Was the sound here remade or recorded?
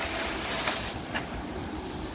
recorded